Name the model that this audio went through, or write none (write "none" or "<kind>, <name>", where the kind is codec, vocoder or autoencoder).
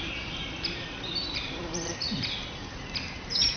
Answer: vocoder, BigVGAN v2